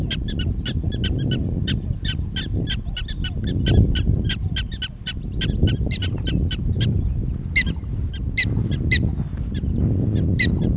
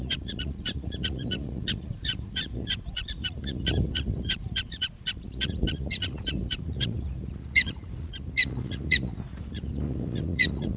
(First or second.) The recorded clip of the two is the first